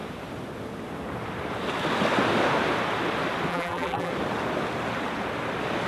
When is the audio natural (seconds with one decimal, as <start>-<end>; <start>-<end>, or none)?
0.0-3.5; 4.1-5.9